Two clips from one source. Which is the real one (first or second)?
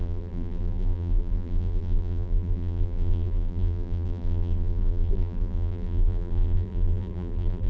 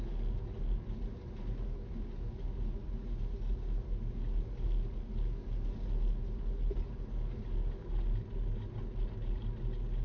second